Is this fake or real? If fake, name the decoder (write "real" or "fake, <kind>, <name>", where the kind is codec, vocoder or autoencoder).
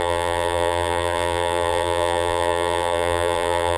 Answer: fake, vocoder, BigVGAN v2